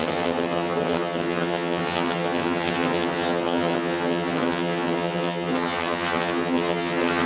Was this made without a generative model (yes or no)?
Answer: no